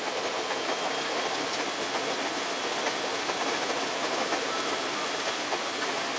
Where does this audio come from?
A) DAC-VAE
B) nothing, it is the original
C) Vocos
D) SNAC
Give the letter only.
B